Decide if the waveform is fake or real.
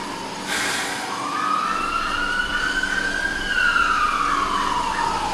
real